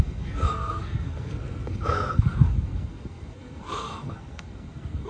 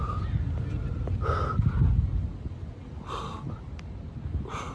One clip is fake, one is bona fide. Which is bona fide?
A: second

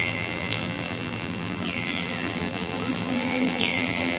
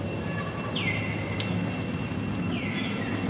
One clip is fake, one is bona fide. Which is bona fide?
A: second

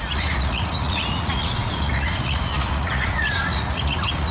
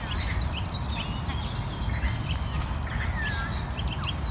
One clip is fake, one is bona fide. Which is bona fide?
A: second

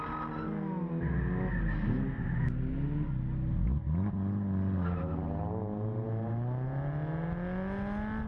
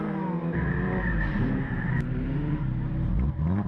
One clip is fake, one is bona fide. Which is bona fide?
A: first